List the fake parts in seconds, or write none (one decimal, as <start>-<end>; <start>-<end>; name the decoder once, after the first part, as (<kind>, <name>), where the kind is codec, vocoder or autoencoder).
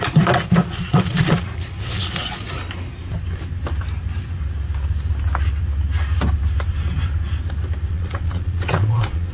0.0-2.6 (vocoder, Vocos); 7.9-9.3